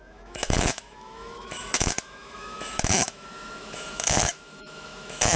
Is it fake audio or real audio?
fake